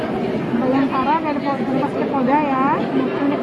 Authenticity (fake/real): real